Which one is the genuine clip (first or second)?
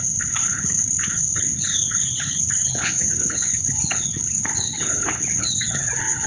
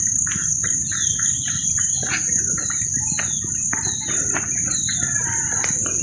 second